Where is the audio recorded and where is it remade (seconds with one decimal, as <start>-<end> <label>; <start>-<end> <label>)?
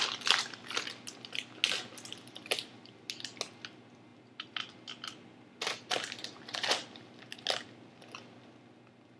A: 0.0-9.2 recorded